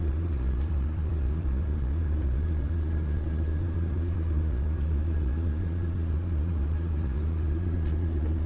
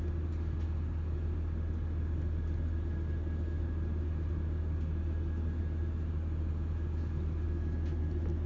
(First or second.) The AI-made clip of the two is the first